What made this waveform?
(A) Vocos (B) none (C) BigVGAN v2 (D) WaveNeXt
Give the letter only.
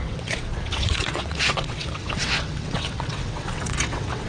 D